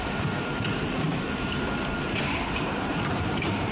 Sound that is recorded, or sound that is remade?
remade